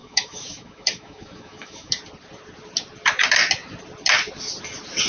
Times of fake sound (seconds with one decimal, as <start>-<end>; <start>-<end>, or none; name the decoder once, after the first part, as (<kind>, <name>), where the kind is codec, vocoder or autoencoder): 0.0-1.9 (autoencoder, DAC-VAE)